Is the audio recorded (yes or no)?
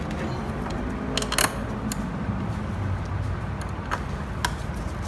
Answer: yes